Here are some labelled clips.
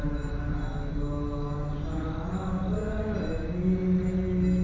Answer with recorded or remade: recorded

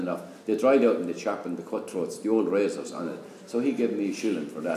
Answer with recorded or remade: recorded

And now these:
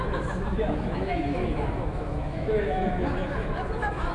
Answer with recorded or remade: remade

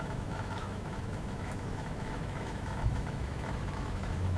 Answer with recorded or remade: remade